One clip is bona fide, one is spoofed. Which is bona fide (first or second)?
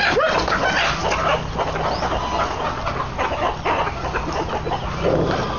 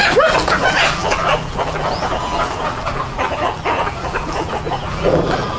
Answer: first